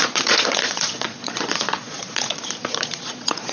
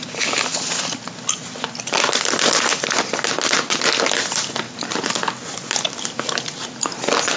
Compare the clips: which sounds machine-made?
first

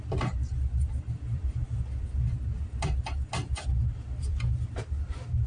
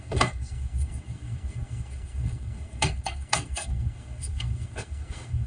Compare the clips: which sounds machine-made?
second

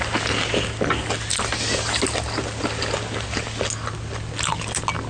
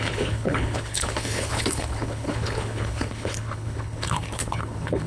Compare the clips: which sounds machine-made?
second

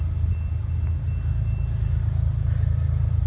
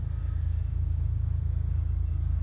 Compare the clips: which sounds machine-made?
second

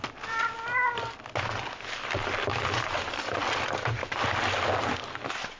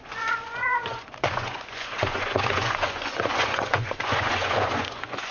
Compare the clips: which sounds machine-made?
second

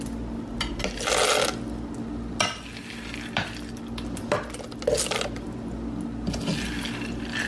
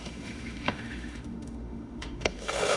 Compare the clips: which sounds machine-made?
second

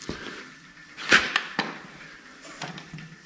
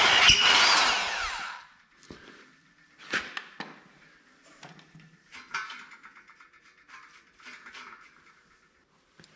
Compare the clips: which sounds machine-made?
first